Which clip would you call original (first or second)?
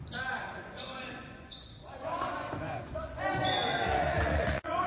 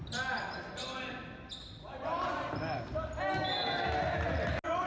second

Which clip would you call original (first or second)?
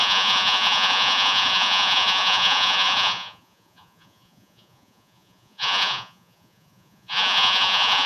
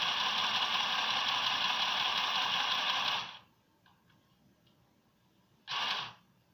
second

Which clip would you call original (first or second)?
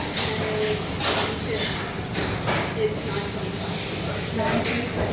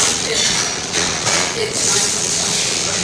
first